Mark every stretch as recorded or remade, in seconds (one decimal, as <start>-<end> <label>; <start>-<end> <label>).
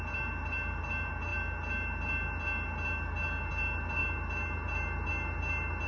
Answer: 0.0-5.9 recorded